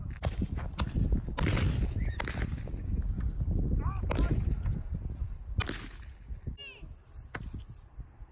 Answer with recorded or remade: recorded